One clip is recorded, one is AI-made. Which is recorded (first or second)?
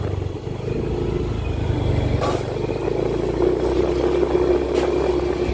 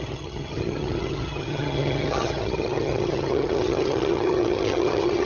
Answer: first